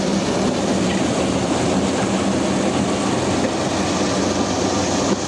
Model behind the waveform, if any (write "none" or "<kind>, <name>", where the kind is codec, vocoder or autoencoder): none